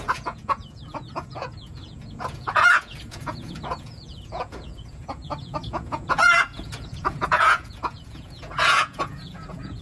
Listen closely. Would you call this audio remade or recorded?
remade